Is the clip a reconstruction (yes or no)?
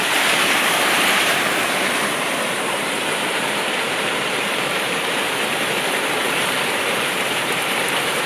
yes